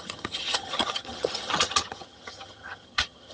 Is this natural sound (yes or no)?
no